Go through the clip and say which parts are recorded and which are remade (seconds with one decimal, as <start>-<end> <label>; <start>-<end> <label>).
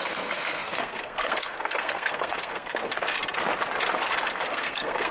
0.0-2.8 remade; 2.8-4.3 recorded; 4.3-5.1 remade